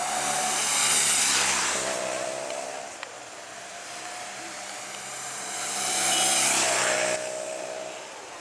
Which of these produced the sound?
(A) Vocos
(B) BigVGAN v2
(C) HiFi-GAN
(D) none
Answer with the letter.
D